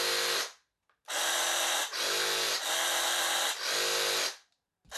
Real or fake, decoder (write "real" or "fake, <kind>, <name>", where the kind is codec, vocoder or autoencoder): real